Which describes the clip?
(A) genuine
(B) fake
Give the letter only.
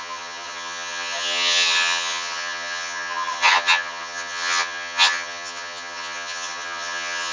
B